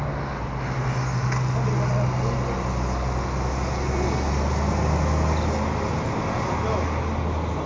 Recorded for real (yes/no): yes